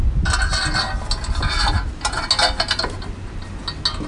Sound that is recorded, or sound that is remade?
recorded